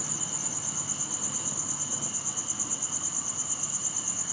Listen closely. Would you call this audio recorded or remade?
recorded